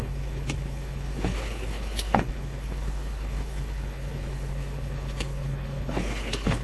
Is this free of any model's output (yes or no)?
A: no